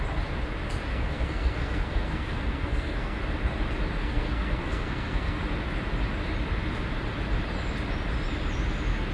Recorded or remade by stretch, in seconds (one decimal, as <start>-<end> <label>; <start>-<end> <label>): 0.0-0.9 recorded; 0.9-3.2 remade; 3.2-4.0 recorded; 4.0-5.4 remade; 5.4-9.1 recorded